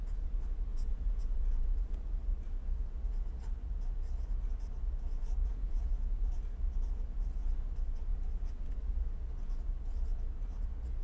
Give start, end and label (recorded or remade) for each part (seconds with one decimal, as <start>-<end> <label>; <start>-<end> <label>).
0.0-0.7 recorded; 0.7-1.9 remade; 1.9-5.4 recorded; 5.4-6.3 remade; 6.3-11.0 recorded